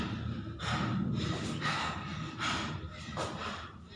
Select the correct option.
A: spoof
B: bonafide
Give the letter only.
B